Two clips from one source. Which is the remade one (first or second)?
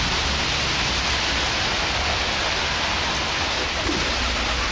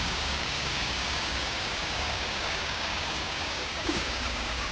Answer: second